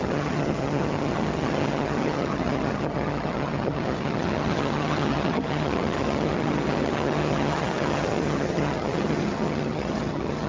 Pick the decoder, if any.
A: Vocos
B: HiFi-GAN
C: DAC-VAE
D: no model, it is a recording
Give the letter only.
B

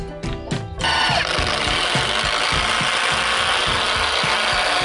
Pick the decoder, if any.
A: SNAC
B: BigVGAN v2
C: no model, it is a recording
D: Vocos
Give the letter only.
C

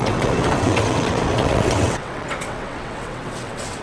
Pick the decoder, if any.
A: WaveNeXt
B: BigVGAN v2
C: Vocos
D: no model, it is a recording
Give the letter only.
A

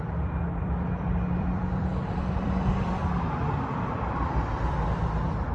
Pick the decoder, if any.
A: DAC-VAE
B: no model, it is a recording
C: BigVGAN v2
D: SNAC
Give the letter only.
C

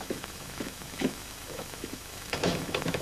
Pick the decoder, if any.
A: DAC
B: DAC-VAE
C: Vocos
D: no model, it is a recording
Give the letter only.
B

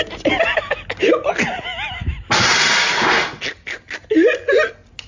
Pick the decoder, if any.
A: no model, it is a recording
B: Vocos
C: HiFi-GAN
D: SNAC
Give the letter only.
A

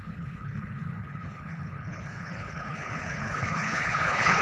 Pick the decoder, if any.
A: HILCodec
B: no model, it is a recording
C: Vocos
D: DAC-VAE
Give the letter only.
A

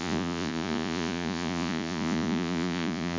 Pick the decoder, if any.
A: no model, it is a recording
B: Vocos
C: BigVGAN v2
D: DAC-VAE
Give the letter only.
B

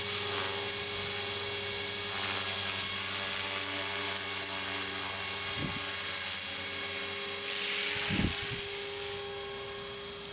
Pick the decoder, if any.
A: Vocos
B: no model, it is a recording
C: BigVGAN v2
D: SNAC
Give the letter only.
B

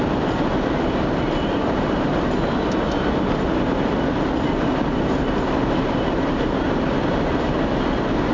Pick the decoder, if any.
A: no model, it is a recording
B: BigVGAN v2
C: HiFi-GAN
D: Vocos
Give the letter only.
A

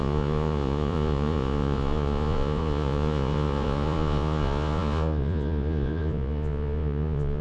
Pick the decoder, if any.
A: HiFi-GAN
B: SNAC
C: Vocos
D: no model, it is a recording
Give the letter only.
C